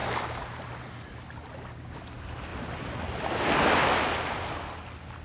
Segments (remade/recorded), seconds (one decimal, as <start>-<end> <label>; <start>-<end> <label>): 0.0-5.2 recorded